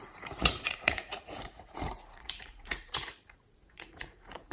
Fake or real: fake